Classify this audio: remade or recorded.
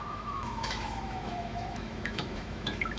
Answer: remade